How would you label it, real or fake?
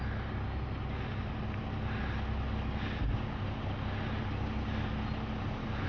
real